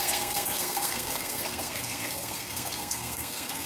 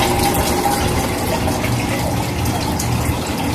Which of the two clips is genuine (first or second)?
second